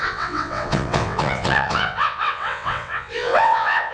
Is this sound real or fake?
fake